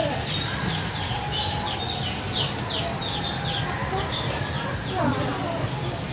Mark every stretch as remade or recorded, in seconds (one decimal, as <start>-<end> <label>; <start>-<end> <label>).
0.0-6.1 recorded